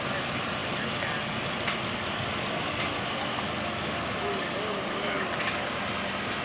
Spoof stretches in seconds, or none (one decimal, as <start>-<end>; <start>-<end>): none